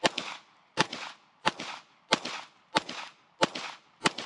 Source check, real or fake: real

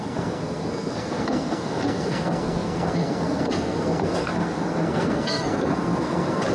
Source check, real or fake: fake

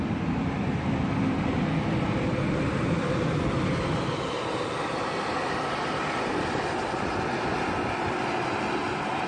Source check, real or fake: real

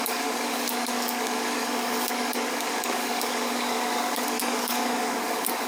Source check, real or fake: fake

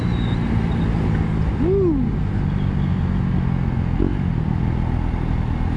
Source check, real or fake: real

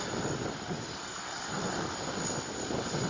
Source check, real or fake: real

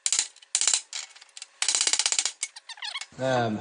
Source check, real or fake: real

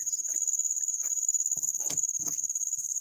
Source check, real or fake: fake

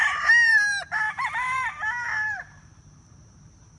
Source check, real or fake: fake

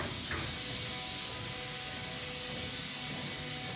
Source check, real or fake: real